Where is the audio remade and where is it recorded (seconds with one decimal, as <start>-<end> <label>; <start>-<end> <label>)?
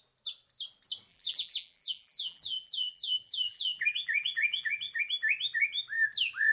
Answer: 0.0-1.1 recorded; 1.1-5.0 remade; 5.0-6.5 recorded